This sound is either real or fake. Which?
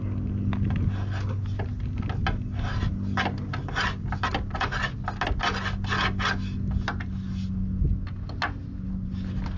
real